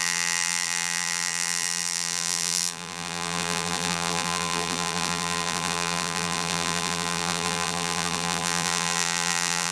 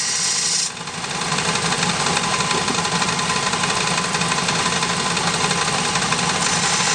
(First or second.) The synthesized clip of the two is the first